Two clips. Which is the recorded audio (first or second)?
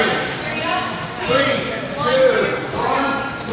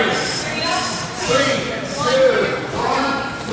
first